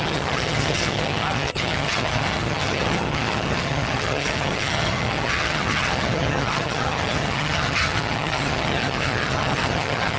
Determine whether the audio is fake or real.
fake